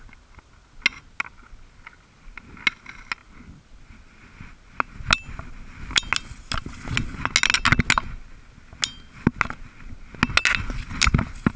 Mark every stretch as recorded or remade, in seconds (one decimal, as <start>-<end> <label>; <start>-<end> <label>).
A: 0.0-11.6 recorded